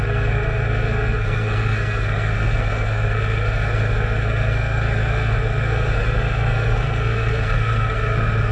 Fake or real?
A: fake